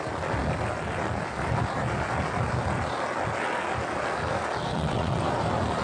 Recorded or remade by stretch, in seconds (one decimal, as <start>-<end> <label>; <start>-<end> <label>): 0.0-4.7 recorded; 4.7-5.2 remade; 5.2-5.8 recorded